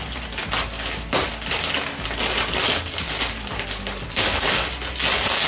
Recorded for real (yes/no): yes